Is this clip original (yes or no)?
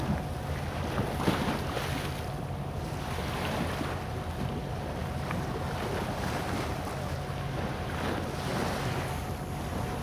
yes